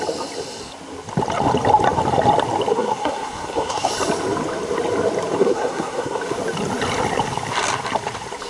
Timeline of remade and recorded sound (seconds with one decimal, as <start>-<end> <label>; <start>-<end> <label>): 0.0-2.7 recorded; 2.7-3.9 remade; 3.9-5.4 recorded; 5.4-6.2 remade; 6.2-8.5 recorded